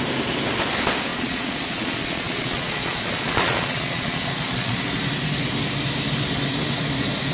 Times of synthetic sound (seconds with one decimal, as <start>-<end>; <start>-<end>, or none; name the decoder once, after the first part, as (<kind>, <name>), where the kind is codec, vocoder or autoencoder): 1.1-4.8 (vocoder, Vocos)